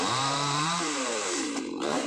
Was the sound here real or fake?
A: fake